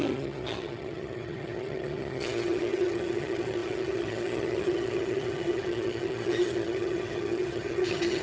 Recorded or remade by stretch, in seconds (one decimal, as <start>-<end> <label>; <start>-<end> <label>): 0.0-8.2 remade